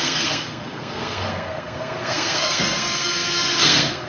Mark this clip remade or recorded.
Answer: remade